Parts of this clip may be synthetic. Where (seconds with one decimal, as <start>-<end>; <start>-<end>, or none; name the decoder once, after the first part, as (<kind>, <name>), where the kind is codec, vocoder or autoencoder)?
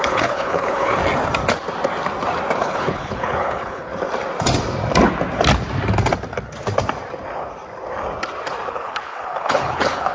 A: 0.0-1.0 (codec, HILCodec); 2.6-3.9; 8.7-10.1